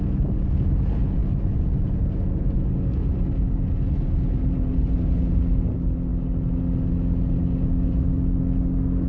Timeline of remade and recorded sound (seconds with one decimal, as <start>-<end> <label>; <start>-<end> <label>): 0.0-9.1 recorded